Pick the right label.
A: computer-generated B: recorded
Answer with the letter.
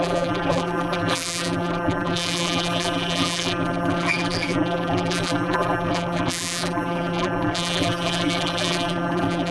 A